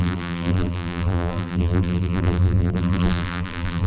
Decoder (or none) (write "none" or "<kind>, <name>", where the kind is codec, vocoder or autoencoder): vocoder, BigVGAN v2